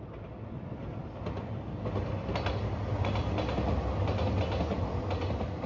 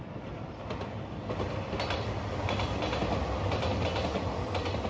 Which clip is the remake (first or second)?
second